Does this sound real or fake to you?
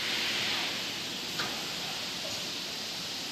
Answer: real